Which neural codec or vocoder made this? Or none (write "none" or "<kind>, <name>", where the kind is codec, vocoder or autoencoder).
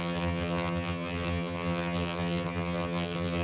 vocoder, HiFi-GAN